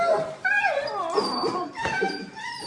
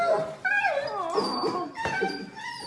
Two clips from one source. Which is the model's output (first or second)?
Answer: first